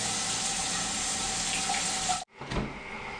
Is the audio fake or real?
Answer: real